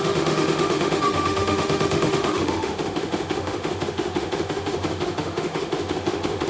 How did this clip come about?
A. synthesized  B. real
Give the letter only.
A